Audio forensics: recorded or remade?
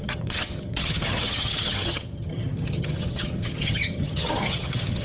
remade